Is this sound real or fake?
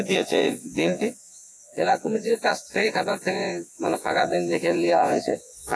fake